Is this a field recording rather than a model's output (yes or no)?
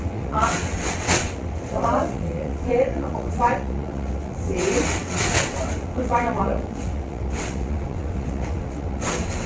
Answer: no